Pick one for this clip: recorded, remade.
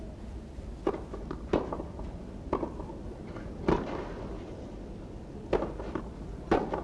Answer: recorded